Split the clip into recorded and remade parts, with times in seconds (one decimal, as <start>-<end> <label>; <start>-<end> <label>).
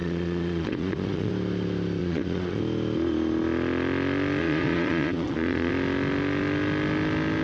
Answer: 0.0-1.3 remade; 1.3-2.0 recorded; 2.0-2.6 remade; 2.6-4.4 recorded; 4.4-5.7 remade; 5.7-7.4 recorded